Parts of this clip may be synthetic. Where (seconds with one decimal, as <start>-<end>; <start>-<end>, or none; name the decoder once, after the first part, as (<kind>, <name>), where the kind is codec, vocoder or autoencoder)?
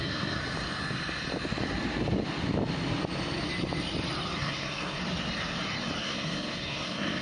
0.0-0.4 (codec, SNAC); 4.4-5.0; 6.0-7.2